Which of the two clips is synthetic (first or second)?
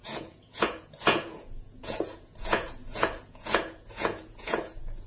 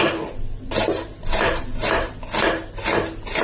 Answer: first